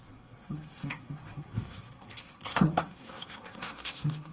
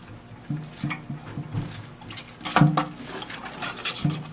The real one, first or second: second